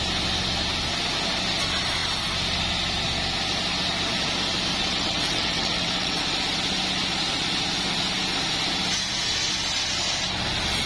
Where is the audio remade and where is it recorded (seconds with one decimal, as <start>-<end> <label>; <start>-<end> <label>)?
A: 0.0-4.8 recorded; 4.8-6.2 remade; 6.2-10.9 recorded